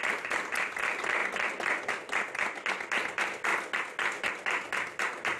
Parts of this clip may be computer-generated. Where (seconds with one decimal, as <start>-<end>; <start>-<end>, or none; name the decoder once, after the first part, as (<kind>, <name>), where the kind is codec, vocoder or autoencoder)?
none